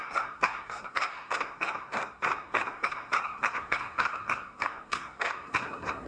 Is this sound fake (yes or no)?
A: yes